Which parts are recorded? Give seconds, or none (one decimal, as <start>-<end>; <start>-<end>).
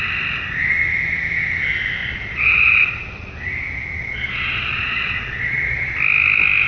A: 0.0-2.0; 3.3-4.0; 5.8-6.7